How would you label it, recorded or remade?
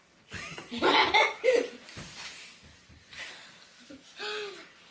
recorded